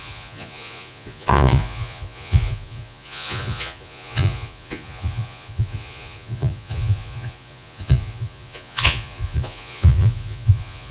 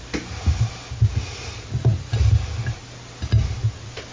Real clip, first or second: second